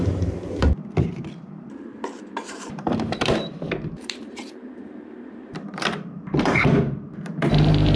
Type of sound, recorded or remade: remade